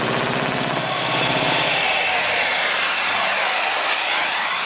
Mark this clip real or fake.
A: real